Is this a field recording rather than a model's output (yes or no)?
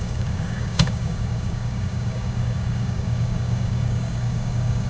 no